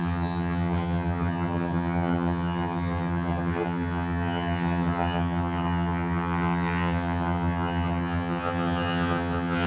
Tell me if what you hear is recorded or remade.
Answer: remade